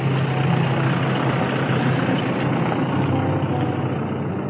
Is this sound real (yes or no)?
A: yes